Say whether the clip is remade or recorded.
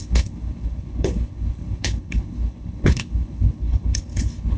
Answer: remade